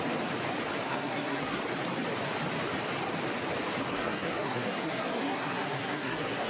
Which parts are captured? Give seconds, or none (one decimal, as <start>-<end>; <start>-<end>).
0.0-0.9; 1.6-3.9